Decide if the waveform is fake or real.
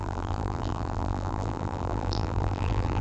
fake